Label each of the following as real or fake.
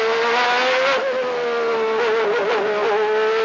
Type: real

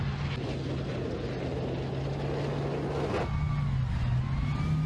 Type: real